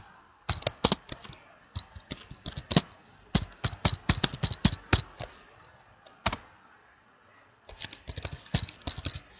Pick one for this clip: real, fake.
real